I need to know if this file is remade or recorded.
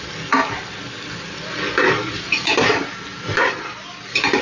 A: remade